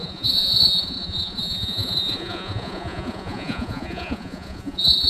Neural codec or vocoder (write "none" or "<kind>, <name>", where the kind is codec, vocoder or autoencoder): vocoder, Vocos